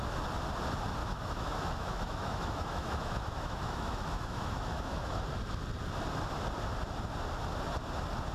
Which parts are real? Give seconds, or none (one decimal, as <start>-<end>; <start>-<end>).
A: 0.0-1.0; 5.2-8.3